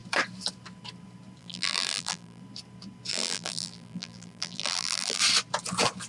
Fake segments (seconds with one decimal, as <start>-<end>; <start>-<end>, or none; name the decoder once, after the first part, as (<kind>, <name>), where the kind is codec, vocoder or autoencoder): 1.4-2.4 (vocoder, BigVGAN v2); 3.1-5.2